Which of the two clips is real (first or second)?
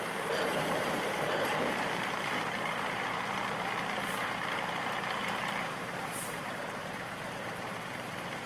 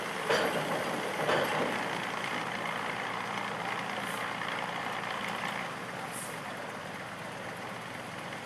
second